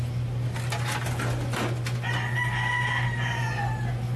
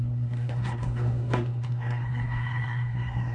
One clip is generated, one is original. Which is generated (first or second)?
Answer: second